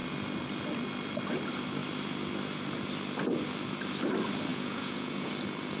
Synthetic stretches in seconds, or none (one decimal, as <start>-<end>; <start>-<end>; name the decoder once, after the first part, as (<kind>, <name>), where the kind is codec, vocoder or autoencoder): 4.5-5.3 (vocoder, Vocos)